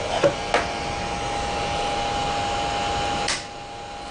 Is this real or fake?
real